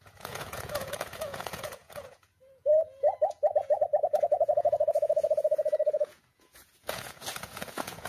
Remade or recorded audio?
remade